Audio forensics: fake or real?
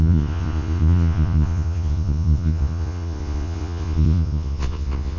fake